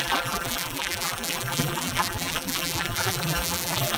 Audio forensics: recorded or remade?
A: remade